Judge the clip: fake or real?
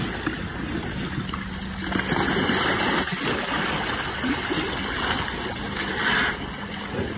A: real